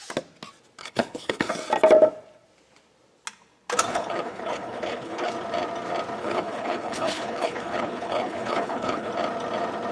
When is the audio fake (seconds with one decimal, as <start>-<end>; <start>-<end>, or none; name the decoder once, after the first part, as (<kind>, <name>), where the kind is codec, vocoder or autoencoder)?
0.8-1.5 (codec, HILCodec); 3.9-5.3; 6.2-9.1